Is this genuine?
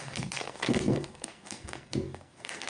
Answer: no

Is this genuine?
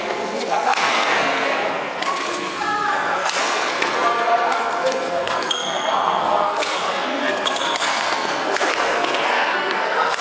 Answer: no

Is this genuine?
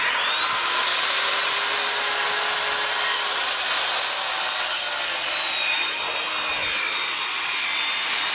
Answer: yes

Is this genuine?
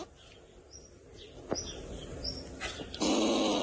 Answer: yes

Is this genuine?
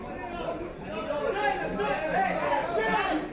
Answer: yes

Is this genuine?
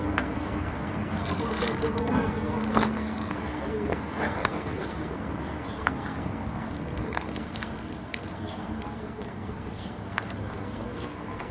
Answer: no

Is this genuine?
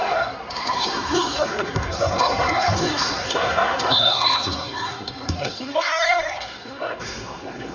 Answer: no